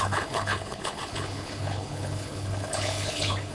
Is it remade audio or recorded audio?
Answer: remade